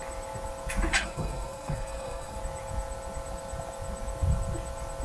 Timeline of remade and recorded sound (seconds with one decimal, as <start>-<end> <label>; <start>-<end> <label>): 0.0-0.9 recorded; 0.9-2.4 remade; 2.4-5.0 recorded

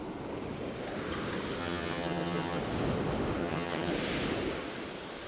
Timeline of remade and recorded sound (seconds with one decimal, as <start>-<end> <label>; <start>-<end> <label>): 0.0-1.6 recorded; 1.6-2.6 remade; 2.6-3.4 recorded; 3.4-3.9 remade; 3.9-5.3 recorded

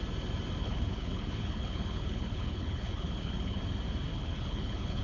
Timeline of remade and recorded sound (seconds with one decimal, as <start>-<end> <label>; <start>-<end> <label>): 0.0-0.6 recorded; 0.6-3.6 remade; 3.6-4.1 recorded; 4.1-5.0 remade

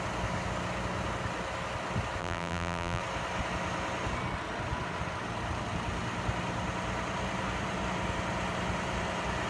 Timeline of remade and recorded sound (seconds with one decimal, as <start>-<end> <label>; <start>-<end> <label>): 0.0-2.2 recorded; 2.2-3.0 remade; 3.0-9.5 recorded

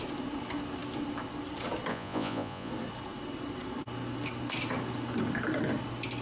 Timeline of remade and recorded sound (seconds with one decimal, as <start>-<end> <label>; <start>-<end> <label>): 0.0-1.9 recorded; 1.9-2.7 remade; 2.7-6.2 recorded

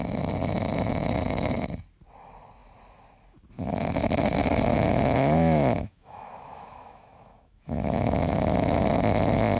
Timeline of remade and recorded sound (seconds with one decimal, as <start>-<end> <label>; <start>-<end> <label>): 0.0-4.7 recorded; 4.7-8.9 remade; 8.9-9.6 recorded

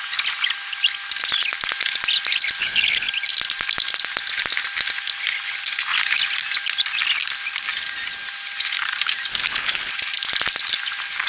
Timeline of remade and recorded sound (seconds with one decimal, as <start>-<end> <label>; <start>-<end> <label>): 0.0-2.6 recorded; 2.6-3.1 remade; 3.1-9.3 recorded; 9.3-9.9 remade; 9.9-11.3 recorded

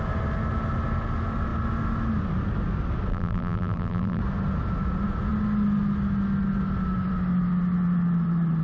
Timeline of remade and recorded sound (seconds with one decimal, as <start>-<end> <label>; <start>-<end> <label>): 0.0-3.1 recorded; 3.1-4.2 remade; 4.2-8.6 recorded